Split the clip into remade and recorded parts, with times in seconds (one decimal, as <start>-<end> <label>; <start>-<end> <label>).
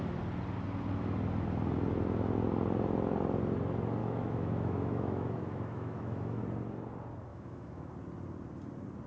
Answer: 0.0-4.0 recorded; 4.0-6.4 remade; 6.4-7.3 recorded; 7.3-7.9 remade; 7.9-9.1 recorded